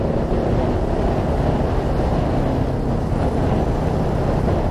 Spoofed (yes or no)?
no